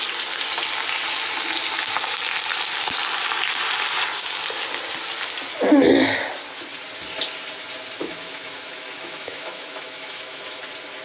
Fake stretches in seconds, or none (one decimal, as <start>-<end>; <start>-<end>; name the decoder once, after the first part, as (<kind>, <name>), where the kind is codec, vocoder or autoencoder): 8.0-10.6 (autoencoder, DAC-VAE)